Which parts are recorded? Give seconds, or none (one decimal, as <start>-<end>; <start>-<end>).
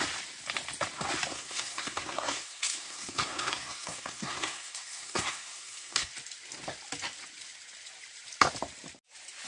0.0-1.3; 6.1-9.5